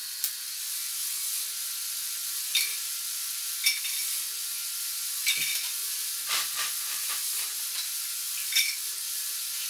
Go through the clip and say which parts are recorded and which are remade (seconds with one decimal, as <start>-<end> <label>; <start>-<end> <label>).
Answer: 0.0-1.1 remade; 1.1-2.5 recorded; 2.5-4.0 remade; 4.0-5.3 recorded; 5.3-9.7 remade